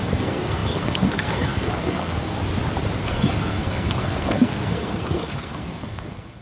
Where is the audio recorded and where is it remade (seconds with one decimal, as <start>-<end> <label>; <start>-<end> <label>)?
0.0-2.4 remade; 2.4-3.0 recorded; 3.0-6.4 remade